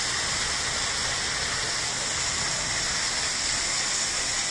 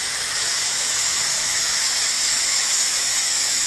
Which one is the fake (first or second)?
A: second